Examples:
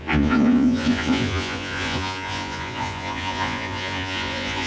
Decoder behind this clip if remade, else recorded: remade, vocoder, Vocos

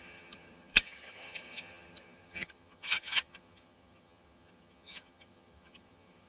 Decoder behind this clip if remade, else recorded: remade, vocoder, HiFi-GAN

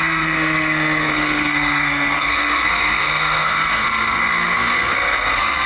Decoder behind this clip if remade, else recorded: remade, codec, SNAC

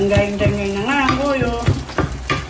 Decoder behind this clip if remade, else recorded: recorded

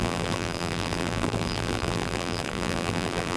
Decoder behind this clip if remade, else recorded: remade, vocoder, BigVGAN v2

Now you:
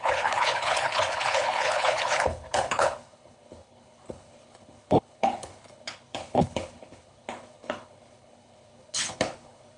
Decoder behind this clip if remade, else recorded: remade, codec, HILCodec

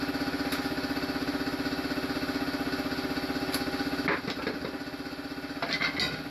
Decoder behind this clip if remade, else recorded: recorded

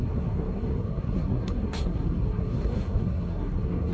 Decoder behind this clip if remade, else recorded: remade, codec, SNAC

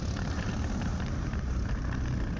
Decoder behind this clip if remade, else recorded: remade, vocoder, BigVGAN v2